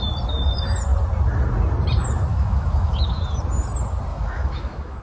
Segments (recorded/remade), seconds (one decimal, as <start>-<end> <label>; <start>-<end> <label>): 0.0-2.3 recorded; 2.3-3.2 remade; 3.2-4.1 recorded; 4.1-5.0 remade